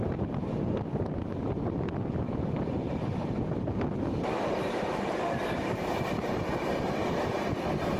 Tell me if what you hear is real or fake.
real